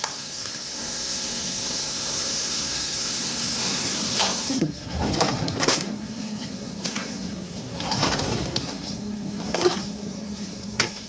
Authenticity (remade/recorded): remade